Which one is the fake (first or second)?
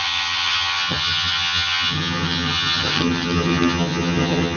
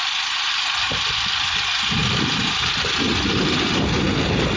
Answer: first